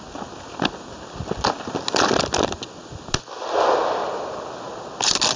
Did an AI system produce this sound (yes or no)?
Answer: no